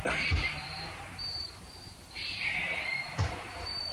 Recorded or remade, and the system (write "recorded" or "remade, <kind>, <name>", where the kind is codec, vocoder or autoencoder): remade, vocoder, BigVGAN v2